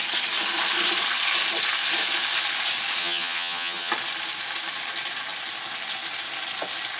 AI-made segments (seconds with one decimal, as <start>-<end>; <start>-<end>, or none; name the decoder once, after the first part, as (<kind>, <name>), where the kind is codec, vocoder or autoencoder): 3.0-3.9 (vocoder, HiFi-GAN)